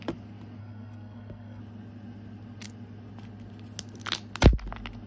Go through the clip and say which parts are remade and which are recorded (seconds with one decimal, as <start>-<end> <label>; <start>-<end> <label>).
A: 0.0-0.6 recorded; 0.6-1.6 remade; 1.6-5.1 recorded

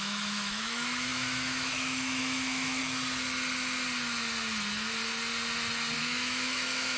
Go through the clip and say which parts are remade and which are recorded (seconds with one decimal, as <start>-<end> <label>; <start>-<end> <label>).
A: 0.0-2.8 remade; 2.8-6.0 recorded; 6.0-7.0 remade

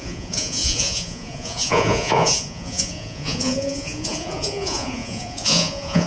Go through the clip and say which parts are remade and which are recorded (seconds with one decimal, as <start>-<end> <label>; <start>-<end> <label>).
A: 0.0-6.1 remade